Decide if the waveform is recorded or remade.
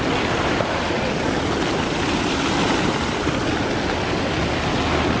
recorded